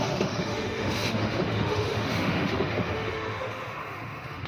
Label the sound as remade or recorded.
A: remade